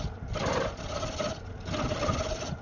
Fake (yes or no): no